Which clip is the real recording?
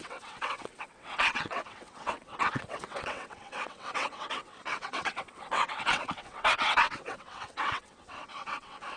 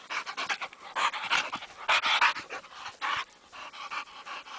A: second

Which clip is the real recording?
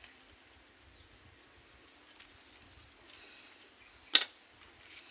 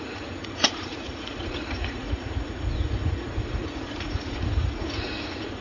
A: first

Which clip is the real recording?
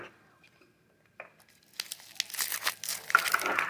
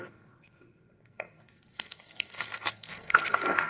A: first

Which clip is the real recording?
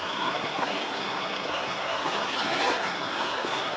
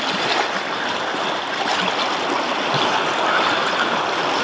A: second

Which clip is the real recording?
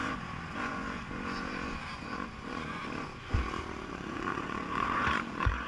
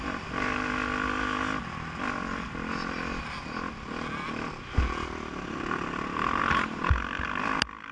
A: second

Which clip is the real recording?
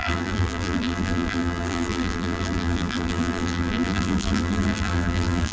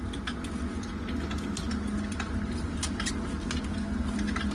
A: second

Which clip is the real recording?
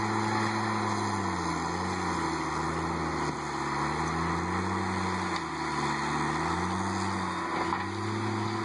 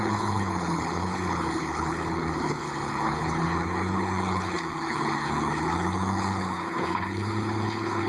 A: first